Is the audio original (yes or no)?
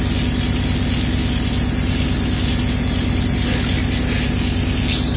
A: yes